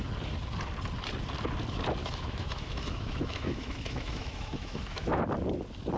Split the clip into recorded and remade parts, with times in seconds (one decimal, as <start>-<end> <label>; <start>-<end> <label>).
0.0-2.0 recorded; 2.0-5.2 remade; 5.2-6.0 recorded